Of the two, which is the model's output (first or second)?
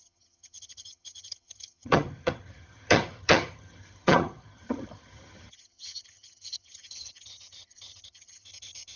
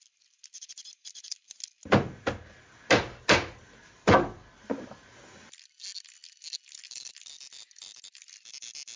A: first